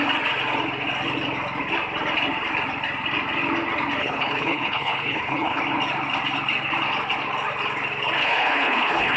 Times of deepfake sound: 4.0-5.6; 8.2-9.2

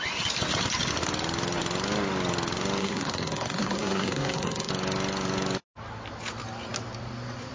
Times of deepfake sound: 2.8-4.7

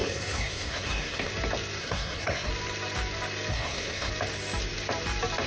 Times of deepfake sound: 0.0-1.3; 1.8-2.5; 3.5-4.1

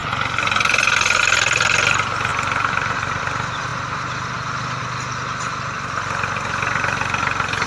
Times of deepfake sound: 0.0-1.2; 2.3-3.2

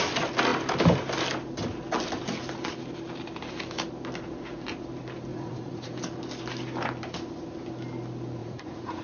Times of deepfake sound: 5.3-6.0; 8.4-9.0

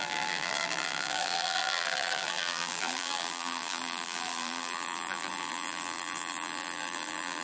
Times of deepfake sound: 0.0-7.4

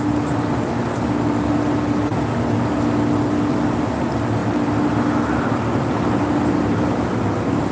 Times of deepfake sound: none

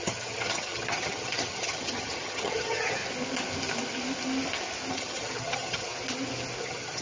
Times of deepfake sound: 0.0-3.0; 4.9-5.9; 6.6-7.0